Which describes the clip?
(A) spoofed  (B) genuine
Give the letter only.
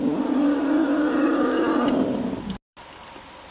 B